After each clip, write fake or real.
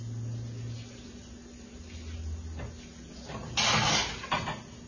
real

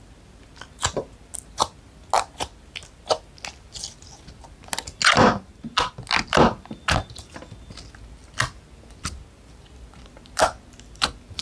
real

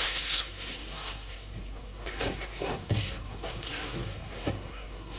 fake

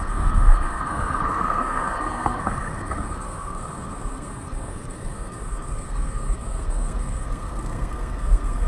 fake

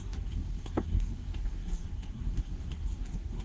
fake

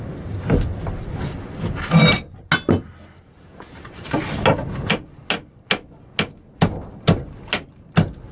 real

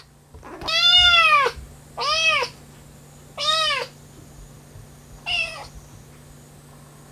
real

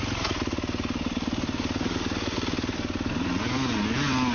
real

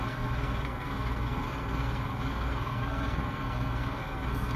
fake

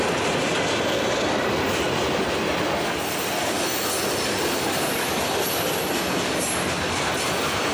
real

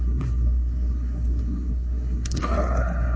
fake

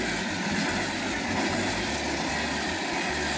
real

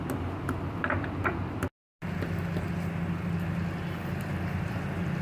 real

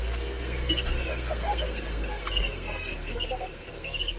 fake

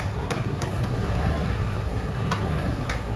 fake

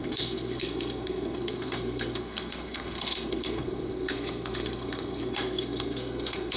fake